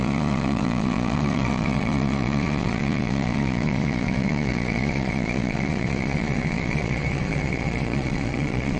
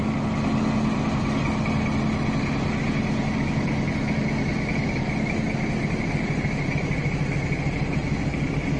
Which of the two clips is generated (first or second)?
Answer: first